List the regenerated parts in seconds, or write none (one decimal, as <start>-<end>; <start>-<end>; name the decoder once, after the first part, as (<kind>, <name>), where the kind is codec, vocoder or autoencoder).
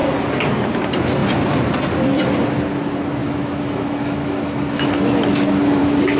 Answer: 3.2-5.8 (autoencoder, DAC-VAE)